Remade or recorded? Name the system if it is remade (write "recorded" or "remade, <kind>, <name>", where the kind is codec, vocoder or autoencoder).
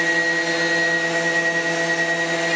recorded